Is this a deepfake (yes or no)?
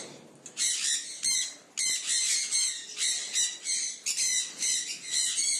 no